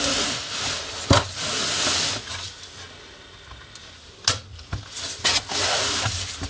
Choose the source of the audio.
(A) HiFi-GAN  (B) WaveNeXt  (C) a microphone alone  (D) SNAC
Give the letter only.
C